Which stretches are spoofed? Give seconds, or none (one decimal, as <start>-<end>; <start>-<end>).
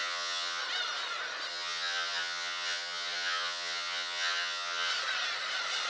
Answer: 0.0-0.6; 1.5-4.9